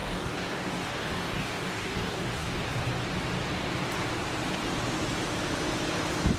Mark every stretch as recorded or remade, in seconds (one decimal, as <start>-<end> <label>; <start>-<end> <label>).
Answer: 0.0-2.6 remade; 2.6-6.4 recorded